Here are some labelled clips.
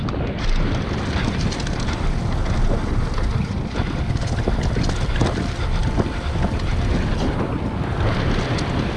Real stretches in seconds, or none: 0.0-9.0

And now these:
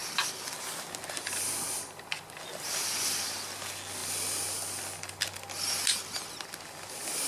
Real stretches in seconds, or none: 0.0-7.3

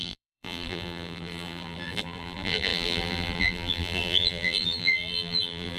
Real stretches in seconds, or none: none